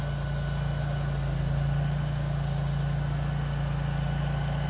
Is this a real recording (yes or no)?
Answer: yes